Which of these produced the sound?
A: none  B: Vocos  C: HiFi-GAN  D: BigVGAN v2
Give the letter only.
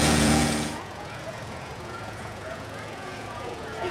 B